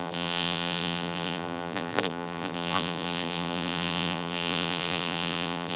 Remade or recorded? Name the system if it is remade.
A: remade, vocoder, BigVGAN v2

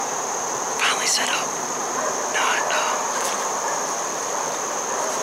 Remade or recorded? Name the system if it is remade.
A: remade, vocoder, BigVGAN v2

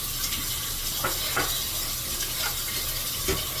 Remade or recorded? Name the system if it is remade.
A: recorded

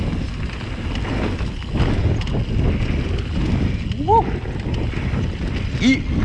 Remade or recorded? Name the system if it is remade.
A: recorded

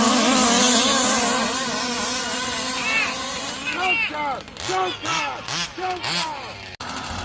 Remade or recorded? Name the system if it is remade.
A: recorded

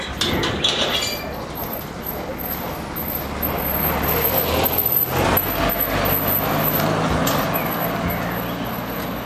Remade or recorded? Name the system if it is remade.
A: recorded